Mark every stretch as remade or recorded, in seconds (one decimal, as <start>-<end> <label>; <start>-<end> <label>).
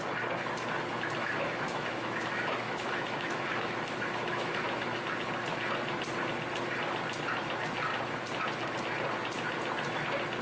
0.0-1.2 recorded; 1.2-5.0 remade; 5.0-10.4 recorded